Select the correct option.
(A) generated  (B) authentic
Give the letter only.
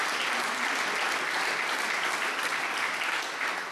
B